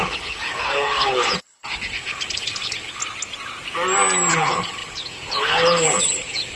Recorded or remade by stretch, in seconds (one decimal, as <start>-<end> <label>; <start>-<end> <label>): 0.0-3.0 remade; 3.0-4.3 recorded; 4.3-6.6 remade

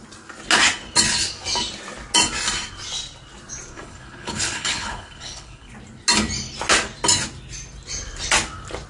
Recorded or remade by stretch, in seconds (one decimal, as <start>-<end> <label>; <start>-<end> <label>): 0.0-3.7 recorded; 3.7-5.7 remade; 5.7-8.9 recorded

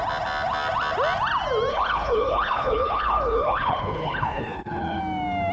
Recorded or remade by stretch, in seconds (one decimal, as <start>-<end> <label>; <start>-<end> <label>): 0.0-1.7 recorded; 1.7-5.0 remade; 5.0-5.5 recorded